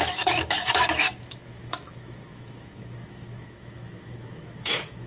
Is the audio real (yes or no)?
no